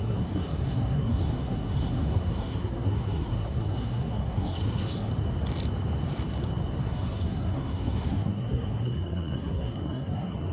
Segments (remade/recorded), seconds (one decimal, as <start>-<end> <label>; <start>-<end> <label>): 0.0-5.1 remade; 5.1-6.8 recorded; 6.8-10.5 remade